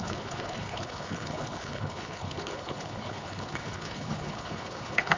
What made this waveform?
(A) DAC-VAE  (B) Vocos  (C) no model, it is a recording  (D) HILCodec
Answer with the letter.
D